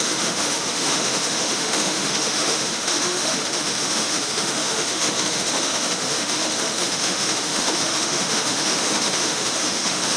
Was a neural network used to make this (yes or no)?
yes